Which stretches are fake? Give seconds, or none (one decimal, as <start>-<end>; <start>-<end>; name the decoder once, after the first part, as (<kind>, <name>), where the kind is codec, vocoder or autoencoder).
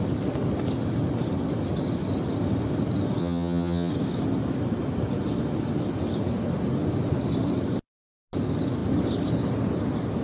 3.2-3.9 (vocoder, HiFi-GAN)